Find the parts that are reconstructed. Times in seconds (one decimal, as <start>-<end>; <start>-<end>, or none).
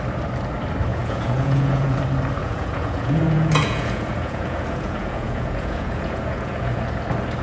0.9-2.0; 2.4-6.8